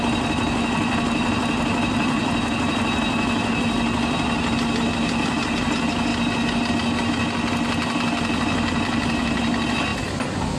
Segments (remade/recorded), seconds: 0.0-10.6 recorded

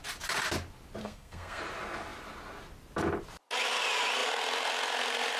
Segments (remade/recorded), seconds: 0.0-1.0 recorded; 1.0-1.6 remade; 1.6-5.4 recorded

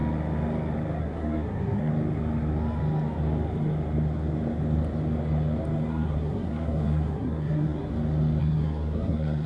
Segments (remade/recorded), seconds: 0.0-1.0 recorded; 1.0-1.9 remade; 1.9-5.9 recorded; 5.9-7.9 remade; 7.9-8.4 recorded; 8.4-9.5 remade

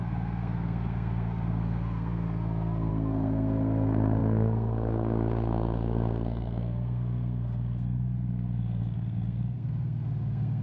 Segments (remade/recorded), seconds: 0.0-10.6 remade